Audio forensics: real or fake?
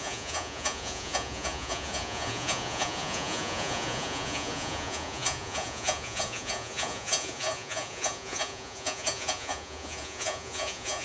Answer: fake